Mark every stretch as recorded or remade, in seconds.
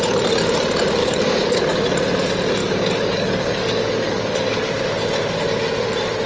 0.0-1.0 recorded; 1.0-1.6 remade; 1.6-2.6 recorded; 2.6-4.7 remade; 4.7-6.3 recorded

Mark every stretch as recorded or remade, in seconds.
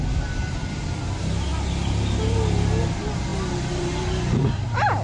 0.0-5.0 recorded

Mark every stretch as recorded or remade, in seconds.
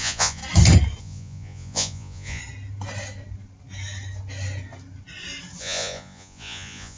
0.0-0.4 remade; 0.4-1.0 recorded; 1.0-2.4 remade; 2.4-5.6 recorded; 5.6-7.0 remade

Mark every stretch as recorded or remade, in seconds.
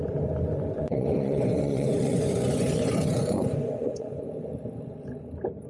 0.0-0.8 recorded; 0.8-4.2 remade; 4.2-5.7 recorded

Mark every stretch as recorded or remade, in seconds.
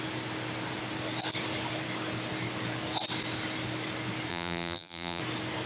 0.0-4.3 recorded; 4.3-5.2 remade; 5.2-5.7 recorded